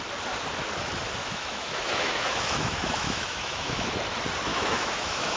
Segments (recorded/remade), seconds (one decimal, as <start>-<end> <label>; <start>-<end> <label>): 0.0-1.2 recorded; 1.2-3.9 remade; 3.9-4.5 recorded; 4.5-5.4 remade